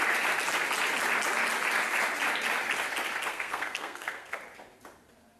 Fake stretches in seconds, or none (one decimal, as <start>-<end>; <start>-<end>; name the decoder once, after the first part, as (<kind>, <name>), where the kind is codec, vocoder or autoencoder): 3.3-4.4 (codec, SNAC)